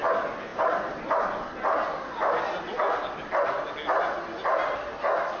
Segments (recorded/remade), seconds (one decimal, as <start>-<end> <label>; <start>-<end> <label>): 0.0-5.4 recorded